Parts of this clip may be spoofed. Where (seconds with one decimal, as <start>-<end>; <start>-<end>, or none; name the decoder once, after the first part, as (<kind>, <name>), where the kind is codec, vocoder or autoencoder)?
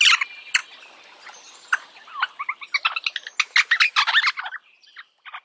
none